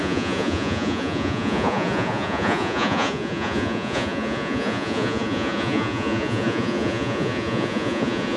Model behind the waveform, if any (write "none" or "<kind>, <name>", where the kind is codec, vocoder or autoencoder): vocoder, Vocos